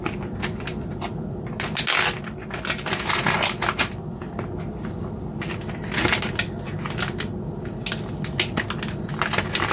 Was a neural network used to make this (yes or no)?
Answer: no